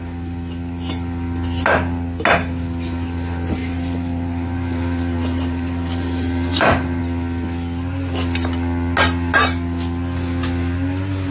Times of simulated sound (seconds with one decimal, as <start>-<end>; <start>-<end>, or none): 3.6-7.0